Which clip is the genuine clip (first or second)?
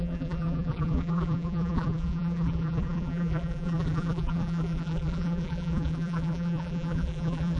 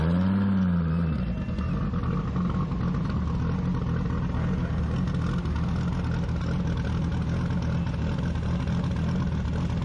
second